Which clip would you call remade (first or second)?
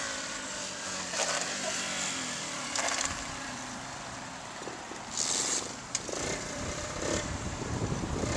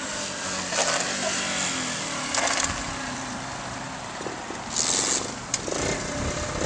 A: first